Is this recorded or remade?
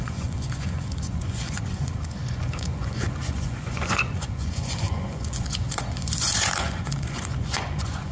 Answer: remade